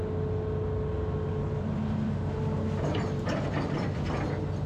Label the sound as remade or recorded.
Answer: recorded